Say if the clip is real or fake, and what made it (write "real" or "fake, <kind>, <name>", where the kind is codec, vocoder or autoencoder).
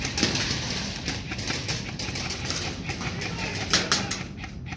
real